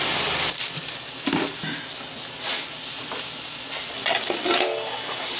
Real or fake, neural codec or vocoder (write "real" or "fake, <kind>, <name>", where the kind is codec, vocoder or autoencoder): real